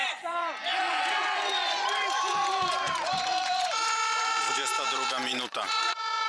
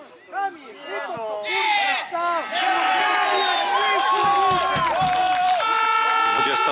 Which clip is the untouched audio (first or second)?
second